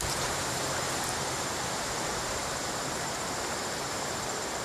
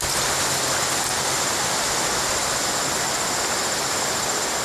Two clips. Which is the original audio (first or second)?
second